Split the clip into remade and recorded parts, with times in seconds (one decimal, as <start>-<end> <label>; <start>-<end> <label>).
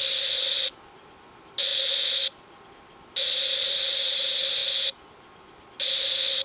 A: 0.0-6.4 recorded